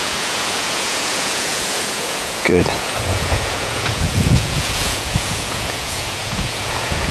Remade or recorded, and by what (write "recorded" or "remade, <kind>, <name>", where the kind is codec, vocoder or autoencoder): remade, vocoder, Vocos